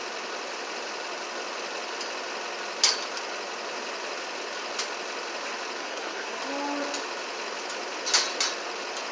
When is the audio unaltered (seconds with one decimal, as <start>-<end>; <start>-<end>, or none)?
0.0-5.8; 6.4-9.1